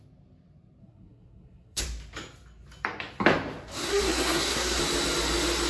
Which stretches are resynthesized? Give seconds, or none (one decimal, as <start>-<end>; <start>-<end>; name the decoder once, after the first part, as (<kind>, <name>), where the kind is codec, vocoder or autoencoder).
0.8-1.8 (codec, SNAC); 3.7-4.8

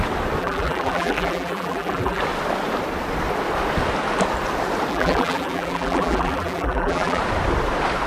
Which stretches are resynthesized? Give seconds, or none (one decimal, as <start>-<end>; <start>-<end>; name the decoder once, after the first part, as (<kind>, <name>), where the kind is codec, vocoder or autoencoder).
0.4-2.2 (vocoder, BigVGAN v2); 4.9-7.2

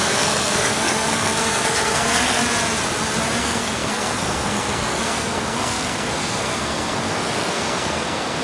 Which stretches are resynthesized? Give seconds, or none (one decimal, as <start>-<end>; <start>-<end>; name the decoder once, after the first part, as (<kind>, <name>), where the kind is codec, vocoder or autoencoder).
0.0-2.4 (codec, SNAC); 3.4-8.4